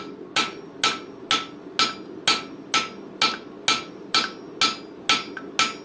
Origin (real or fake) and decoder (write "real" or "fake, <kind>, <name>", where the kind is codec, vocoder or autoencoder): real